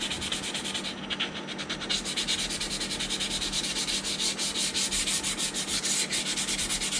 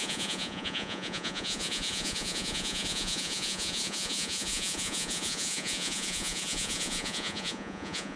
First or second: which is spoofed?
second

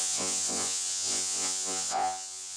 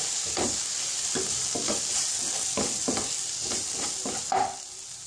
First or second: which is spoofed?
first